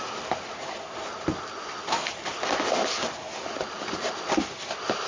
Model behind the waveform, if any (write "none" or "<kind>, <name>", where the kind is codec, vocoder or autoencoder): none